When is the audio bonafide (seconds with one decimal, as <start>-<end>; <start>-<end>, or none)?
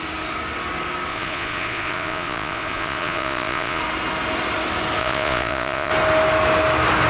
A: 0.0-1.1; 3.8-5.0; 5.9-7.1